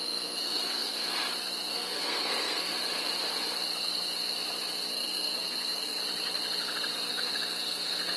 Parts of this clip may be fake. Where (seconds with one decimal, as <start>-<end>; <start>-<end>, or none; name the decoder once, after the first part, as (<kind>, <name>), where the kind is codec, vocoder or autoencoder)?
0.0-0.9 (codec, SNAC); 1.7-2.8; 4.9-6.0; 7.1-8.2